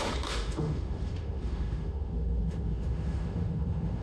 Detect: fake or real fake